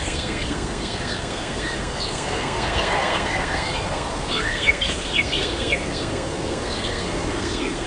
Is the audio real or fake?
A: fake